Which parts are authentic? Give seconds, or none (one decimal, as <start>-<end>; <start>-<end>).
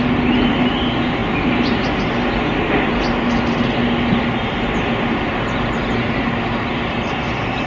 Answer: 0.0-7.7